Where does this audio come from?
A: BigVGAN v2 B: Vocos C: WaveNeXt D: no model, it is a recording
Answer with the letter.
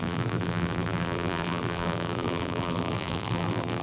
A